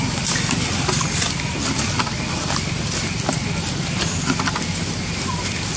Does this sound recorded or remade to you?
recorded